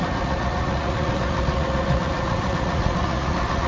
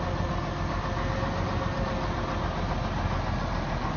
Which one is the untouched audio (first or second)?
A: second